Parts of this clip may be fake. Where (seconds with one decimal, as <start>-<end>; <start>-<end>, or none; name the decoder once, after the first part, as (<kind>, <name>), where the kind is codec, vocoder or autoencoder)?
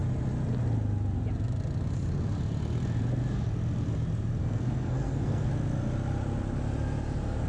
4.4-5.5 (codec, SNAC)